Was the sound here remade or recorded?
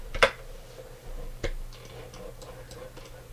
recorded